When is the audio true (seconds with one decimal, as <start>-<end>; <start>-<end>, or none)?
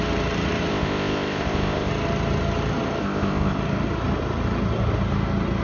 0.0-0.7; 1.9-3.0; 3.6-5.6